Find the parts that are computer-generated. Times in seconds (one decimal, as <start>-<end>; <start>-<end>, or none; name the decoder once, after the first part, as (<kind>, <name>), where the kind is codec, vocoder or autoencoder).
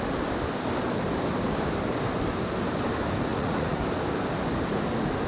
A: 3.3-3.8 (vocoder, Vocos)